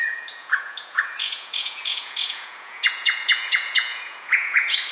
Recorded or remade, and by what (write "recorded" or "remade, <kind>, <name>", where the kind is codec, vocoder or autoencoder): remade, vocoder, Vocos